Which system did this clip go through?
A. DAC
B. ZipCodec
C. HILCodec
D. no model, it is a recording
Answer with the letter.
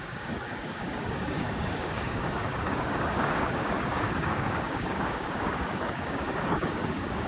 A